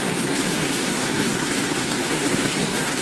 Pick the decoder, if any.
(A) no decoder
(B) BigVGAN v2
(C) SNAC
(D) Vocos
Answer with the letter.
C